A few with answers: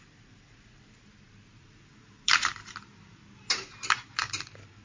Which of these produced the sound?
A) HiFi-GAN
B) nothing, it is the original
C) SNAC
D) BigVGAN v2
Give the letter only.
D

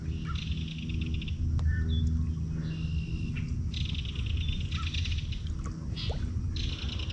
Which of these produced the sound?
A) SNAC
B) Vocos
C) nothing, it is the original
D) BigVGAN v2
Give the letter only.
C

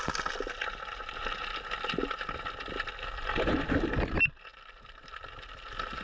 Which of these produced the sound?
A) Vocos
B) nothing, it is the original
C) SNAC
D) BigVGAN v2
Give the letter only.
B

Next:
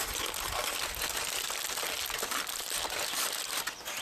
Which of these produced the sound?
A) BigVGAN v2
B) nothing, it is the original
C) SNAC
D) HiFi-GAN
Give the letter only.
B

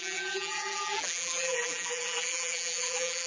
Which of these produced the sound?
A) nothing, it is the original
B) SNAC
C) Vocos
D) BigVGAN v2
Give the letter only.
D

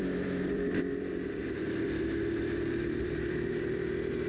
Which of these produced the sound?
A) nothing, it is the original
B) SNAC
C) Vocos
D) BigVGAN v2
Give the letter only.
D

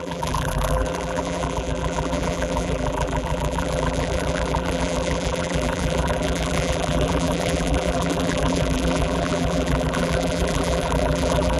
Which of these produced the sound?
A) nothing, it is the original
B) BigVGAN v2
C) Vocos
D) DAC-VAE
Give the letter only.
B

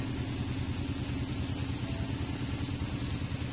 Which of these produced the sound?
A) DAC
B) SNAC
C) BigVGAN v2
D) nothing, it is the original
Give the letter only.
D